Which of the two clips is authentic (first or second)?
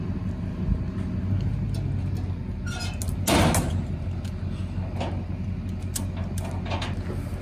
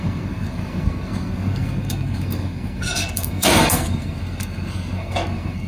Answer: first